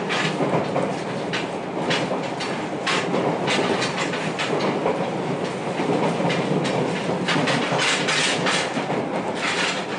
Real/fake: real